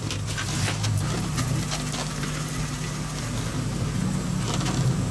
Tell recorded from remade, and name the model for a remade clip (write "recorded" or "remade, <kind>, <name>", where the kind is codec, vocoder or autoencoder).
recorded